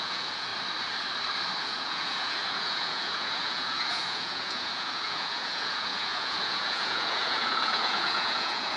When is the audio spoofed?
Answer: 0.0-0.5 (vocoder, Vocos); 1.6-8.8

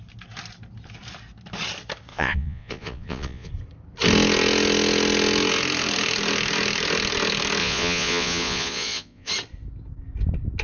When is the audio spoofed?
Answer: 2.1-3.5 (vocoder, Vocos); 7.6-9.3

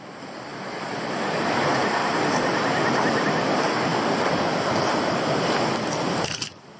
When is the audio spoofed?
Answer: none